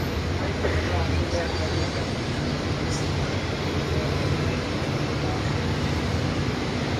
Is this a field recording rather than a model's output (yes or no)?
yes